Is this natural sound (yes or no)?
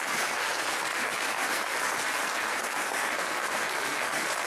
no